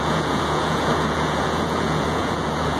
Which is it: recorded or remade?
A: remade